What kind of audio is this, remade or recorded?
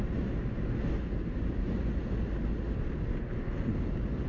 recorded